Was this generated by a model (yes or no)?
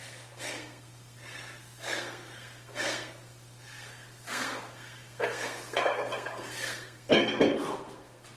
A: yes